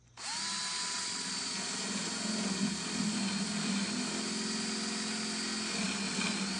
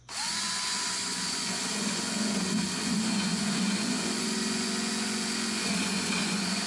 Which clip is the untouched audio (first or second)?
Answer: first